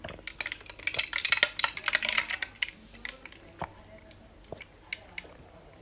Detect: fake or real real